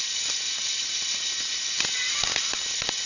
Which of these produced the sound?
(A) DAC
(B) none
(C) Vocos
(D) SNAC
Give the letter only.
B